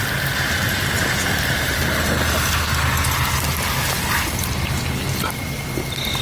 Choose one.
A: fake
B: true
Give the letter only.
B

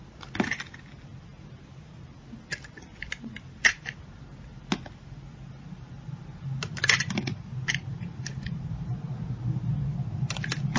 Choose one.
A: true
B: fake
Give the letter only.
A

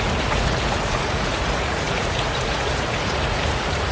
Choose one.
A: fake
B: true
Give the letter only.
A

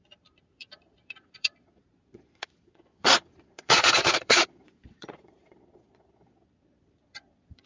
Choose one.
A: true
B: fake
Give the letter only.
B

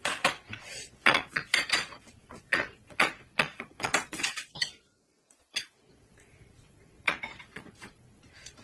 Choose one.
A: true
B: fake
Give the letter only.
B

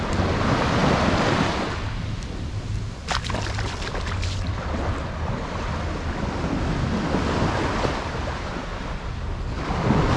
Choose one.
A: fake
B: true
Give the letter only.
B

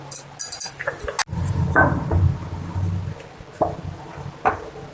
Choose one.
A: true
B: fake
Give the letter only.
A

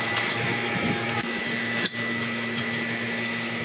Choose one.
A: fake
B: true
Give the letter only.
A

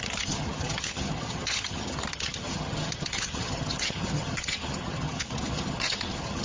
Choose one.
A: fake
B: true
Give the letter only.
A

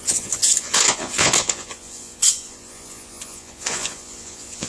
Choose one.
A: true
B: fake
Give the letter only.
B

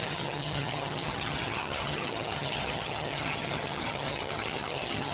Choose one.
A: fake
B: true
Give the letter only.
A